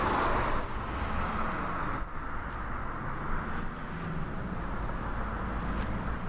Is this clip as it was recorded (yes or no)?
yes